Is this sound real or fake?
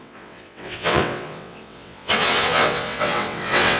fake